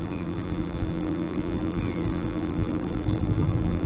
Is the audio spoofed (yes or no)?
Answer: yes